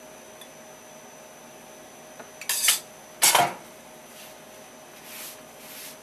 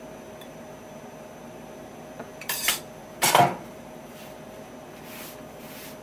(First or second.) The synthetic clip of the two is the second